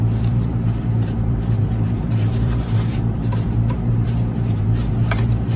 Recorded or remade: remade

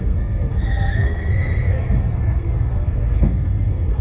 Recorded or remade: remade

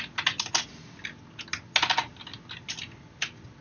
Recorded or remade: recorded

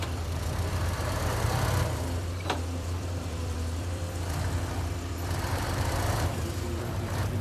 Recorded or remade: remade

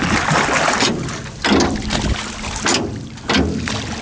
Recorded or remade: recorded